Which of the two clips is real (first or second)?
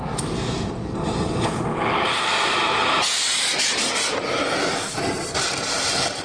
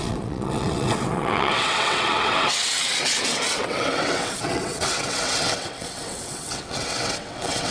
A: first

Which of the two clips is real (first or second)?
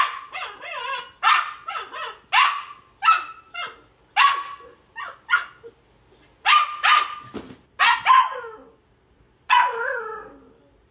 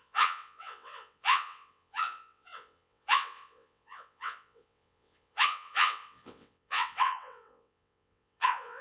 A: first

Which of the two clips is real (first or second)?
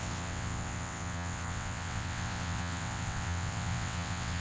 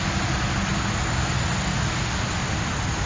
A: second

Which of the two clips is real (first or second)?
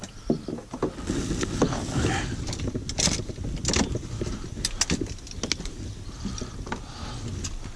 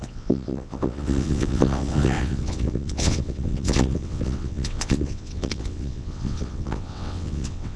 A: first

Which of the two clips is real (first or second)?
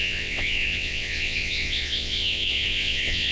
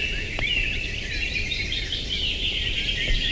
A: second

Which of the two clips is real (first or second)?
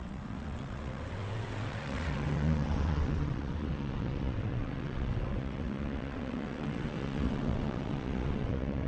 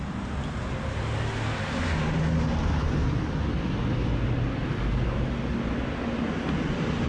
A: second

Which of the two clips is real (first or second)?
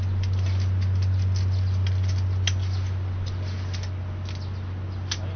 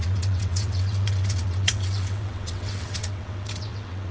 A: first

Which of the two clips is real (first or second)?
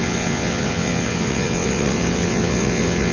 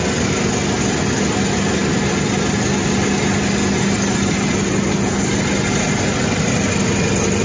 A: second